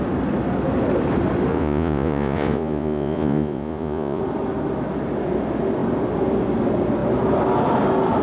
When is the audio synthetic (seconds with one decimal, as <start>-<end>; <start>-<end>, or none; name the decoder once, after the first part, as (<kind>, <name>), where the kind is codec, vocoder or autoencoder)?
1.5-4.2 (vocoder, Vocos)